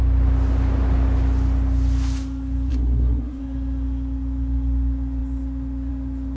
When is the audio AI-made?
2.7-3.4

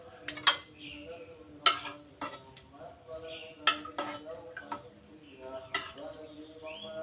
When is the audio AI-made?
none

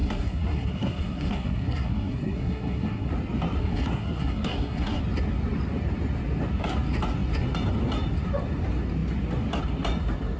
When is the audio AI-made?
0.0-3.1; 3.6-5.0

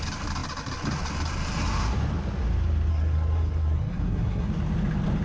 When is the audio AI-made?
2.9-4.5